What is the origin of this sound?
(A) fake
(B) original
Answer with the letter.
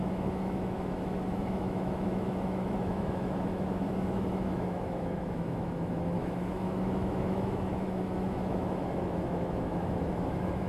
A